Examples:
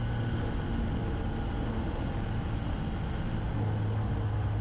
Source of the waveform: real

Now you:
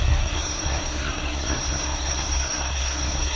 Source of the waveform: fake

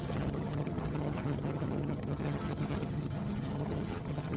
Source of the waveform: fake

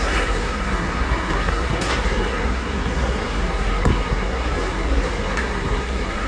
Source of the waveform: fake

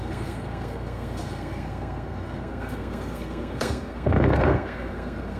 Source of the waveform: fake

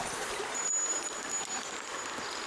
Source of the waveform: real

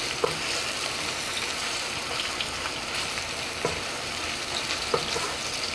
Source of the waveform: real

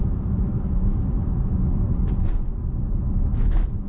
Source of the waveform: fake